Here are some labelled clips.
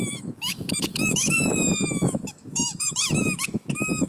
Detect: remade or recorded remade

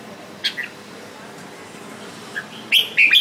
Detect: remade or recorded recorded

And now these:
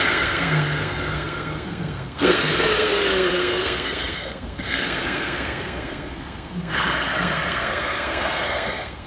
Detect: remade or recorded remade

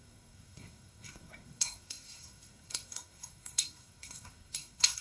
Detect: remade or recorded remade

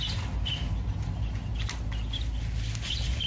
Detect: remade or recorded recorded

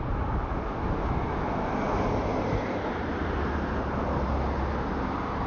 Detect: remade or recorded recorded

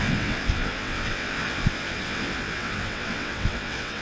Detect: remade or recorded remade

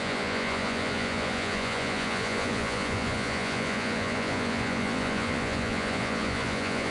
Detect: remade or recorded remade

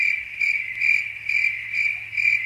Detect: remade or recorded recorded